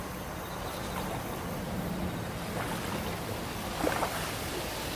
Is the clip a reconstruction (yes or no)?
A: no